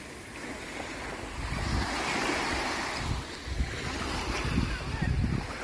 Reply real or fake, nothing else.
real